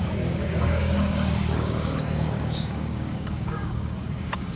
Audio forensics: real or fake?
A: fake